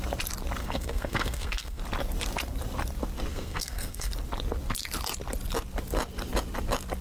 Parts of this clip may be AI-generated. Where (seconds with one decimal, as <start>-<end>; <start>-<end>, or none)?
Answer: 0.6-1.8; 3.3-4.1